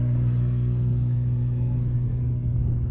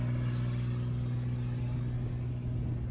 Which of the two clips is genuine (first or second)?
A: second